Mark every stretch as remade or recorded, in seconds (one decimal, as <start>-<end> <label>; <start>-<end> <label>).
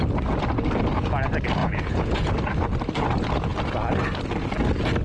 0.0-1.6 recorded; 1.6-2.3 remade; 2.3-5.0 recorded